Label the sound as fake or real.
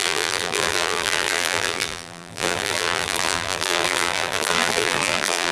fake